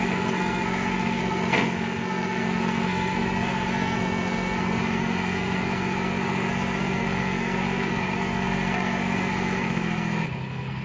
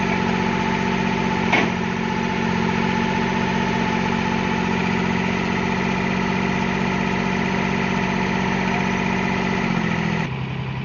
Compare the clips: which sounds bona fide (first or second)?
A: second